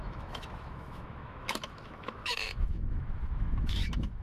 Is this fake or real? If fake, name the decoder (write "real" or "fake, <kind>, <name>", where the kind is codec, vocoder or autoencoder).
fake, autoencoder, DAC-VAE